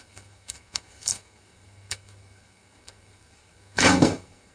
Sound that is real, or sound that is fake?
fake